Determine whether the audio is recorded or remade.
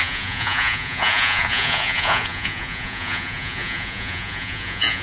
remade